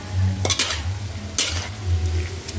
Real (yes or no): yes